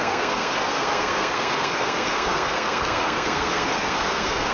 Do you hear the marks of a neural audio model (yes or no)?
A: yes